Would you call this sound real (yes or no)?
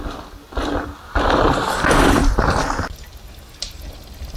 yes